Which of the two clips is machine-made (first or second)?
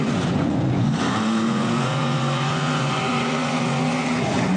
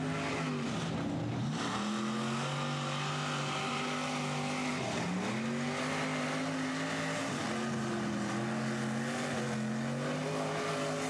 first